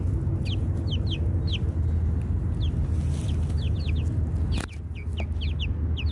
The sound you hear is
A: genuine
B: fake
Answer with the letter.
A